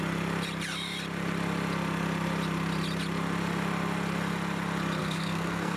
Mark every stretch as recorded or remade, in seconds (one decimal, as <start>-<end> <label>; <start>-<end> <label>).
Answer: 0.0-5.0 recorded; 5.0-5.8 remade